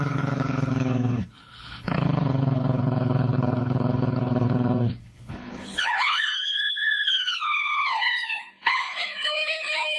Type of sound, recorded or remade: remade